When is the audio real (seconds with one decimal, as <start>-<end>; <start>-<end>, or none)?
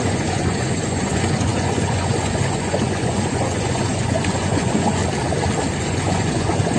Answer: 5.0-5.8